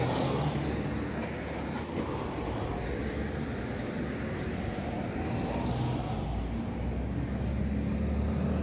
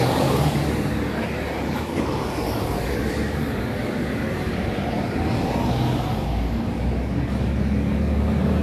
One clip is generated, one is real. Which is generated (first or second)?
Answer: second